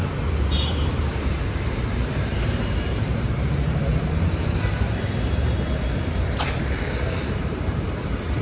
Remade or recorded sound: remade